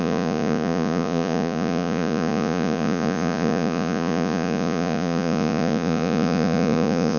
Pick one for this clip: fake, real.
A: fake